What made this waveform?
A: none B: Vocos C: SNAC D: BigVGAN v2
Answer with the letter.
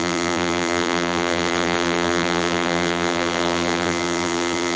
D